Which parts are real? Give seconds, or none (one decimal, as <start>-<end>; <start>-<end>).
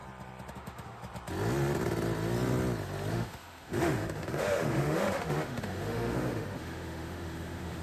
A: 0.0-0.5; 1.0-3.1